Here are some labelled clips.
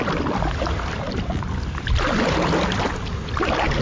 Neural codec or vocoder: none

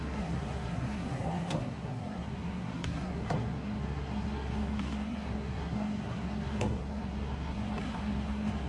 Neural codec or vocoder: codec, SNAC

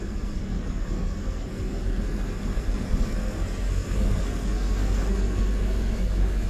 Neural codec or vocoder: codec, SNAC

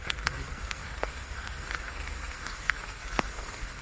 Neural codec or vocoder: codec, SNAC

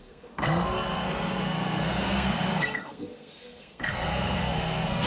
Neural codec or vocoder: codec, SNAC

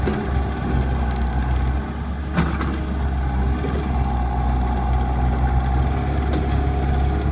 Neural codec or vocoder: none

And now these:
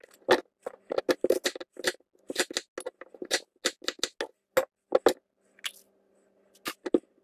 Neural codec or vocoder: none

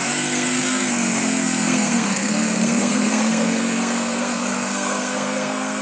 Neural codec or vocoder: codec, SNAC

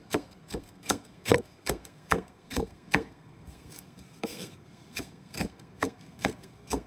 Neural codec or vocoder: codec, SNAC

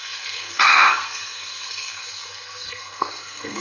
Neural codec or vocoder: codec, SNAC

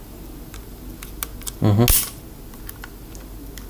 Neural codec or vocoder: none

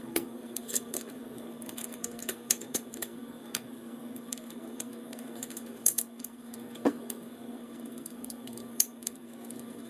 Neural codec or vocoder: codec, SNAC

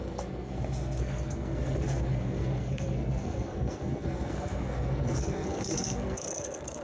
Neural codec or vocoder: codec, SNAC